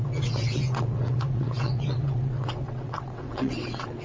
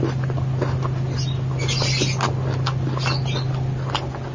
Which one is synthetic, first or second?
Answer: first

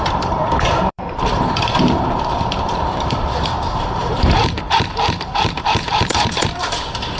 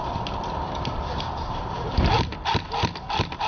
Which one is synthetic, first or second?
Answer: first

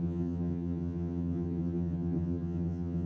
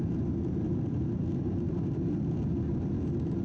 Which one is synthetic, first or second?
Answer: first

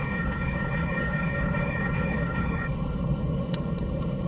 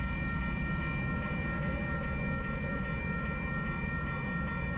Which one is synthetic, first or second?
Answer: first